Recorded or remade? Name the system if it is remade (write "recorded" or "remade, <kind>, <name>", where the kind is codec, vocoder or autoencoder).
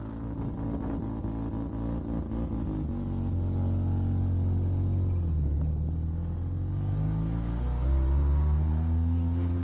recorded